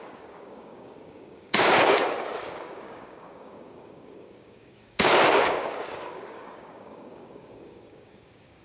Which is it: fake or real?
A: fake